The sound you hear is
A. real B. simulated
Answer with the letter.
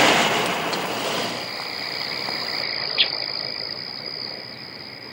B